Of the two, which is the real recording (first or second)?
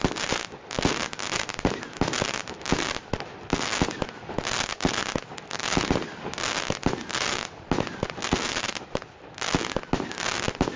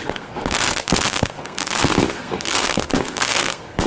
first